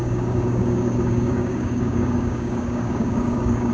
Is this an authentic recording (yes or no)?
no